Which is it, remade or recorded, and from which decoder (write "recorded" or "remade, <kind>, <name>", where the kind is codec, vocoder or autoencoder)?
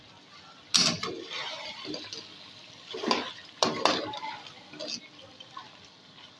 recorded